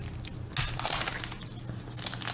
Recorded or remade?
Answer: recorded